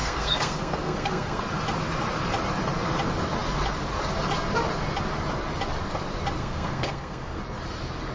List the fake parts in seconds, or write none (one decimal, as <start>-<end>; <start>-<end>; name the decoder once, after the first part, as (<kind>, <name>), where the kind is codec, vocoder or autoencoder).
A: 0.0-1.4 (codec, SNAC); 6.4-7.4